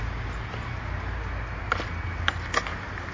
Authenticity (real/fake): real